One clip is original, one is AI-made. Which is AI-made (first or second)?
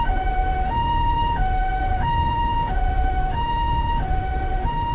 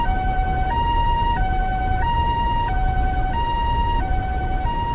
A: first